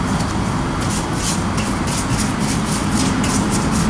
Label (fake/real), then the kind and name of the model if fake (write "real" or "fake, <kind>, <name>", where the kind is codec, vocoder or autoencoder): real